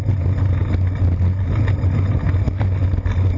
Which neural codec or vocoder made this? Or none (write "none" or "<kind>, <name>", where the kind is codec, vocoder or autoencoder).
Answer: none